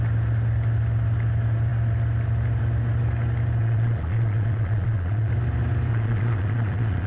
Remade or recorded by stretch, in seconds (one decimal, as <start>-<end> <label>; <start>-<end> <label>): 0.0-3.6 recorded; 3.6-5.3 remade; 5.3-5.9 recorded; 5.9-7.1 remade